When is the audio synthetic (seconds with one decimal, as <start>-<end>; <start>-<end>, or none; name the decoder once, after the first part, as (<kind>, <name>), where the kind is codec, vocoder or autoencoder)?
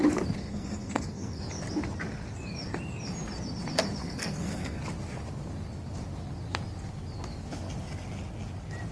0.4-1.4 (codec, SNAC); 4.0-4.8